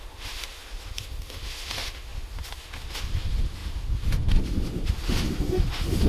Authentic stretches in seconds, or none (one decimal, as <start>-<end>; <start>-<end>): none